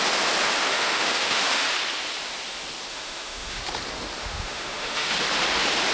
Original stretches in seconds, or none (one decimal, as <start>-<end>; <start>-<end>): 0.0-0.7; 1.7-2.9; 3.6-4.2; 5.1-5.9